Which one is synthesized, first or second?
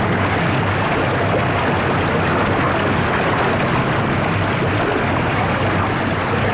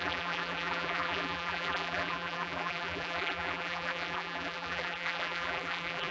second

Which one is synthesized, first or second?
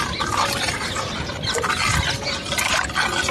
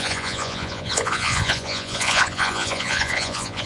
second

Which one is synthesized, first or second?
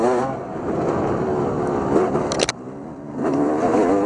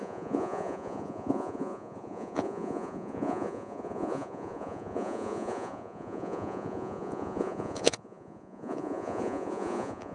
second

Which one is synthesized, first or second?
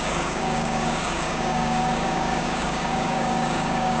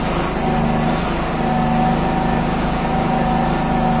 first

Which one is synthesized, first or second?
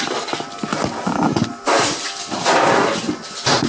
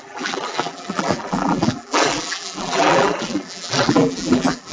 second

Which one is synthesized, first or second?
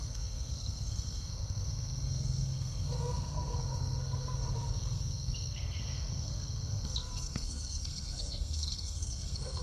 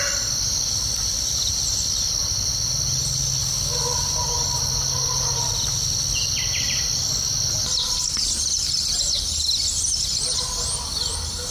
first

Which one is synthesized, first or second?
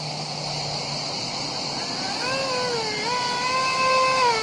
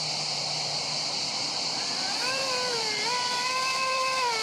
second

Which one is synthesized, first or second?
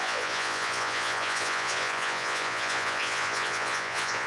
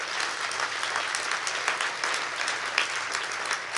first